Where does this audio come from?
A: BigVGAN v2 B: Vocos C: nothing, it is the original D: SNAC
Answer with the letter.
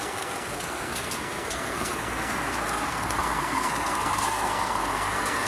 D